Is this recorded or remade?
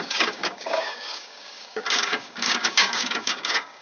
remade